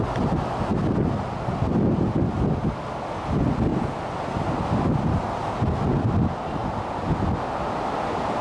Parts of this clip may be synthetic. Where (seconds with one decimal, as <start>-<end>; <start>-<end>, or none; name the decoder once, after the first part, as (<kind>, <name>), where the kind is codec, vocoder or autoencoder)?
none